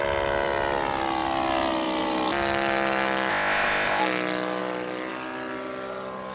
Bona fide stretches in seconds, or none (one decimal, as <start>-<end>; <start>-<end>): 0.0-3.3; 4.0-6.3

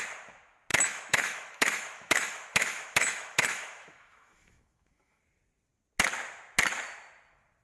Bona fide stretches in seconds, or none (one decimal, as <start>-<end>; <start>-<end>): 0.0-0.7; 5.2-7.6